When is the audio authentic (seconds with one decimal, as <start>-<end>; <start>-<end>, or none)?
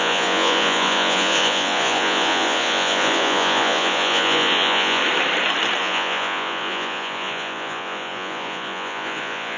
5.0-5.8